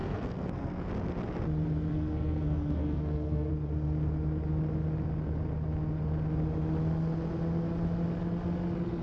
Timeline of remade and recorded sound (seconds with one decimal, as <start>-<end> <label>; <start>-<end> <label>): 0.0-0.9 remade; 0.9-1.9 recorded; 1.9-3.5 remade; 3.5-9.0 recorded